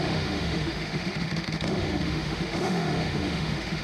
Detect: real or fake fake